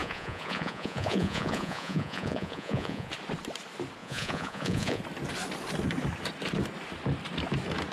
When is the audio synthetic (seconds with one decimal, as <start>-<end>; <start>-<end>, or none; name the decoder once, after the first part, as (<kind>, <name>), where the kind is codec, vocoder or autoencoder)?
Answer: 0.0-3.1 (vocoder, Vocos); 4.0-5.0